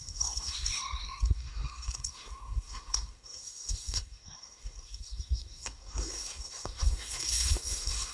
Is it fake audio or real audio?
fake